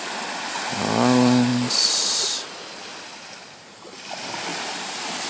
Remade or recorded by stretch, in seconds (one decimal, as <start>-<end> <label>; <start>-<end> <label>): 0.0-4.5 recorded; 4.5-5.3 remade